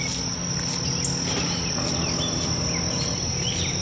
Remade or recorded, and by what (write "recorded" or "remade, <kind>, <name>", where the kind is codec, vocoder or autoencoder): recorded